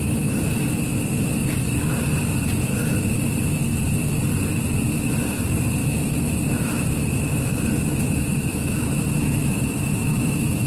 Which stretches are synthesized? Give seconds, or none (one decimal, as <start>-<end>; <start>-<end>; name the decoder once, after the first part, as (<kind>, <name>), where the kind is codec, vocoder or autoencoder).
5.8-10.7 (autoencoder, DAC-VAE)